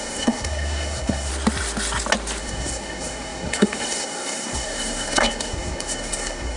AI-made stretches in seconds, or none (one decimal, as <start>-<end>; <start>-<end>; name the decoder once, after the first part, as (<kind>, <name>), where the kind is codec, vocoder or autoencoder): 0.0-1.3 (codec, SNAC); 2.4-6.6